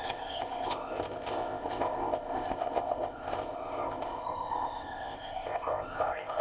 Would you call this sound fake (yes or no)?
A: yes